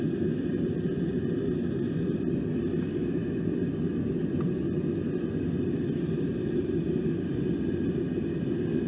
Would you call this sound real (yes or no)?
yes